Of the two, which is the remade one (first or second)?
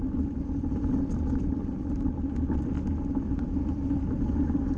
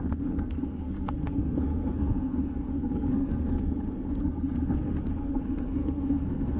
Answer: second